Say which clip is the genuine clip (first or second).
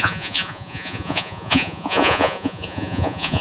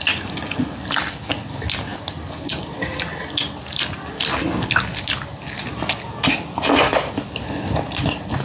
second